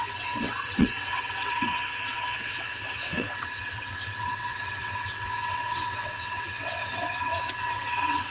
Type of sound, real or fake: fake